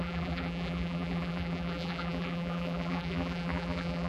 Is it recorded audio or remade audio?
remade